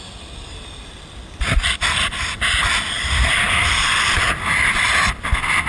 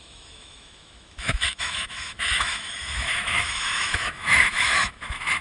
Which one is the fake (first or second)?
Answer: second